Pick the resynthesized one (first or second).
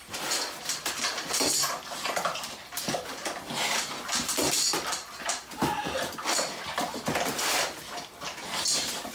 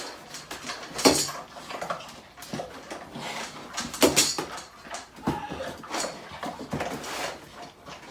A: first